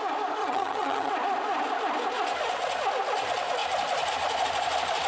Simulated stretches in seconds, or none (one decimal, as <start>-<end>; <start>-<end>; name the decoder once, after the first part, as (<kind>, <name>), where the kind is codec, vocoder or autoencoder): 0.4-1.1 (vocoder, HiFi-GAN)